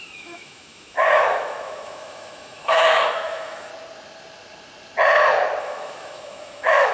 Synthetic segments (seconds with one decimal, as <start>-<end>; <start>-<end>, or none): 0.0-3.7; 5.6-6.9